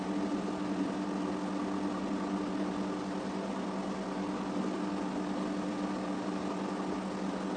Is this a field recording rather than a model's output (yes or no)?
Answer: yes